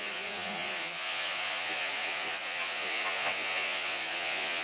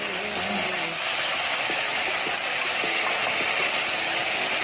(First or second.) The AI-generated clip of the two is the first